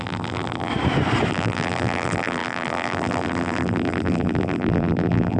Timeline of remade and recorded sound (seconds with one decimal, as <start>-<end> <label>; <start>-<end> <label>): 0.0-0.7 remade; 0.7-1.3 recorded; 1.3-5.4 remade